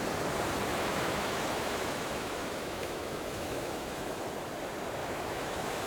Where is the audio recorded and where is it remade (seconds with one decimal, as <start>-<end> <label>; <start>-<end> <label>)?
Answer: 0.0-0.7 recorded; 0.7-4.2 remade; 4.2-5.0 recorded; 5.0-5.9 remade